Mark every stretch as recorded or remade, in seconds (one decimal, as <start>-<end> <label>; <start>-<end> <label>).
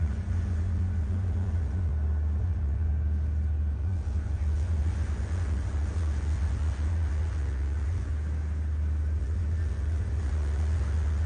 0.0-1.9 remade; 1.9-2.4 recorded; 2.4-2.9 remade; 2.9-3.7 recorded; 3.7-8.1 remade; 8.1-9.2 recorded; 9.2-11.3 remade